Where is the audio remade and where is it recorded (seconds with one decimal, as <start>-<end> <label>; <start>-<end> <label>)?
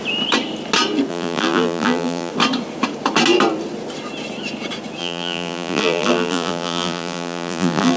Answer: 0.0-1.1 recorded; 1.1-2.3 remade; 2.3-5.0 recorded; 5.0-8.0 remade